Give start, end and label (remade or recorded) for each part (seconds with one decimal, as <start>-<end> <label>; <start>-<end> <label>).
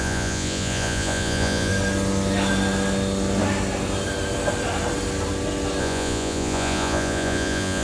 0.0-1.7 remade; 1.7-5.8 recorded; 5.8-7.8 remade